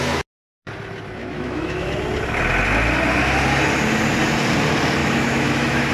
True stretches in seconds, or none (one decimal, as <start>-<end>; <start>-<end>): 0.0-1.2; 1.9-5.0